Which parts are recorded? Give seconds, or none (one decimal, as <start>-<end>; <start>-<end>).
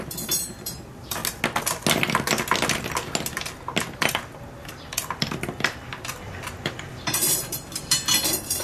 1.2-3.9